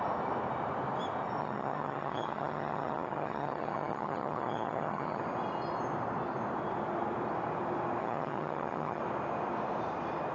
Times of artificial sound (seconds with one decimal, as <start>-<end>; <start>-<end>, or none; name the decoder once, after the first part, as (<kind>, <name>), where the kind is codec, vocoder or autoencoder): 1.4-5.2 (vocoder, HiFi-GAN); 8.0-9.0